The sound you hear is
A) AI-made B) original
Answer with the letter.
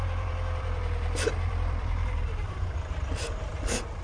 A